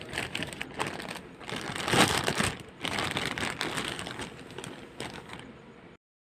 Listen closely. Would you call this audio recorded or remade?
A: recorded